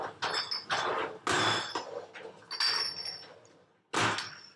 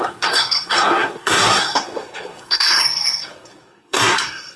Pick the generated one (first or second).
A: second